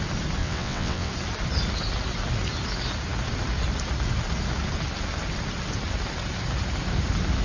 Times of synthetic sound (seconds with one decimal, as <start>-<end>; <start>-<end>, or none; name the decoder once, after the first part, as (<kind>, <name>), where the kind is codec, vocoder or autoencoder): 0.4-1.1 (vocoder, WaveNeXt)